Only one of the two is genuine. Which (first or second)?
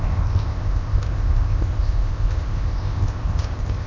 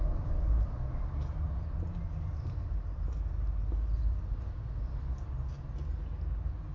second